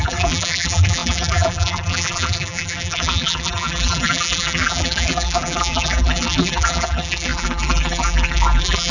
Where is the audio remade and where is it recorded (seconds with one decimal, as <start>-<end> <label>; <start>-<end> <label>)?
0.0-8.9 remade